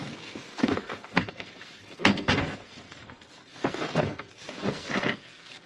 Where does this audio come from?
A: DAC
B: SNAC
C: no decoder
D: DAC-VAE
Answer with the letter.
B